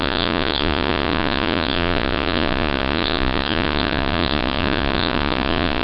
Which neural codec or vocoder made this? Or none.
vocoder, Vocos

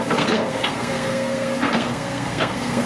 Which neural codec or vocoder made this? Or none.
codec, SNAC